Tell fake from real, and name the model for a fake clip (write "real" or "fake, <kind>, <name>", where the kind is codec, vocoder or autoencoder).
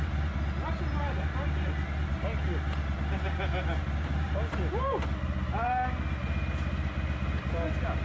real